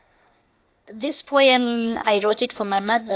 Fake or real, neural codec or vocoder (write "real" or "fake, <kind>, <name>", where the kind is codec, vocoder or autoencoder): fake, codec, SNAC